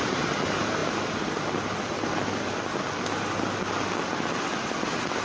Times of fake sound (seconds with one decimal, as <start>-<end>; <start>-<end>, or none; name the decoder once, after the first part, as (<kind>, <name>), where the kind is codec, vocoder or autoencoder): none